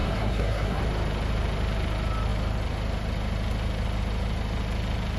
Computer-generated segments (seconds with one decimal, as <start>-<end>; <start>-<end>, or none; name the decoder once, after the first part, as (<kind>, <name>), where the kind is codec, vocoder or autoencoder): 0.0-0.8 (codec, SNAC)